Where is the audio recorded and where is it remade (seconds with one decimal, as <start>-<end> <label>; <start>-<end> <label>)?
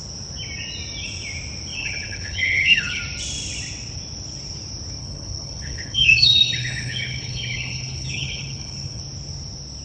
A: 0.0-1.7 recorded; 1.7-3.0 remade; 3.0-5.0 recorded; 5.0-9.0 remade; 9.0-9.8 recorded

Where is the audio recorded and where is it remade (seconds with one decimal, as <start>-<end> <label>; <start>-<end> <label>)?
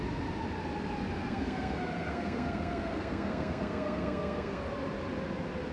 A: 0.0-1.2 recorded; 1.2-4.6 remade; 4.6-5.7 recorded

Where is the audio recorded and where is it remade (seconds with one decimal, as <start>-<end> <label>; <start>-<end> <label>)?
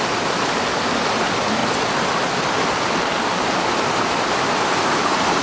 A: 0.0-5.4 recorded